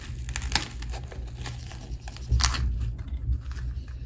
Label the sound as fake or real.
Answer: real